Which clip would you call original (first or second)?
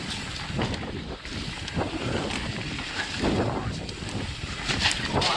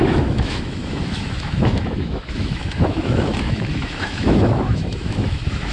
first